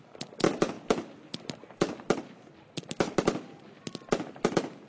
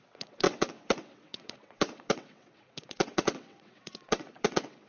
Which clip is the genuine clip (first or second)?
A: first